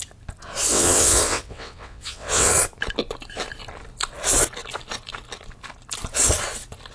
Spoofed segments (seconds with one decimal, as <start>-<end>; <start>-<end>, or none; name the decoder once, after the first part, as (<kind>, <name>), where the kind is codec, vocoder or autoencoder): 0.7-2.5 (vocoder, WaveNeXt)